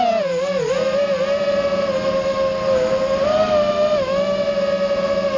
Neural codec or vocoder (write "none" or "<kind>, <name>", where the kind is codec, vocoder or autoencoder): none